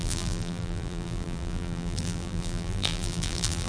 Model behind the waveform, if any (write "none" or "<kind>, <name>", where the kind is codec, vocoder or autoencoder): vocoder, BigVGAN v2